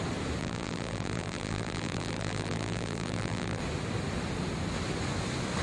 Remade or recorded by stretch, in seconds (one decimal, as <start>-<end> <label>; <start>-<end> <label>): 0.0-0.4 recorded; 0.4-3.6 remade; 3.6-5.6 recorded